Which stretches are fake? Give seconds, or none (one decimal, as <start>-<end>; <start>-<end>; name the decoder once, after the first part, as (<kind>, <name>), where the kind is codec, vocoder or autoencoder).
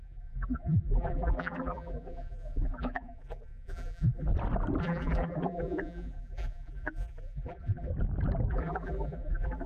0.0-4.3 (vocoder, BigVGAN v2); 4.8-7.9; 8.5-9.7